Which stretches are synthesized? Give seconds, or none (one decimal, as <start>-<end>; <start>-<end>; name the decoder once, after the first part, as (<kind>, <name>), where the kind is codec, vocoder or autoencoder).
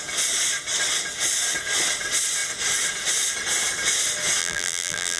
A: 4.4-5.2 (vocoder, BigVGAN v2)